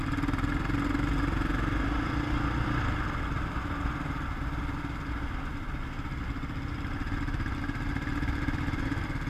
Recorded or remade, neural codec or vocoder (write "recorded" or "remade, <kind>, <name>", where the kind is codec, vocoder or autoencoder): recorded